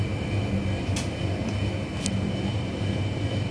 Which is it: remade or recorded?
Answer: remade